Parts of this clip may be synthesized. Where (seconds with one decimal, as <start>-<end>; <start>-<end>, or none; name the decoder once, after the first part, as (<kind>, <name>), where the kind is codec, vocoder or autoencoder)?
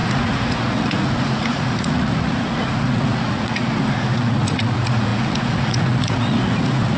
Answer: 0.0-7.0 (vocoder, Vocos)